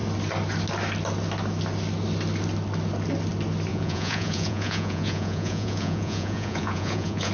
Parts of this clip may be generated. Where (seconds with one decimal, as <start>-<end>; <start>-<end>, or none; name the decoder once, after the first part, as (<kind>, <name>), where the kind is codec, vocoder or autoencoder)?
3.7-7.3 (vocoder, Vocos)